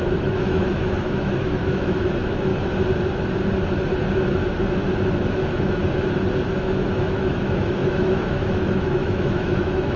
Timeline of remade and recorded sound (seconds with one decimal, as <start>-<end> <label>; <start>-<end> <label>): 0.0-2.5 remade; 2.5-5.2 recorded; 5.2-5.8 remade; 5.8-6.6 recorded; 6.6-10.0 remade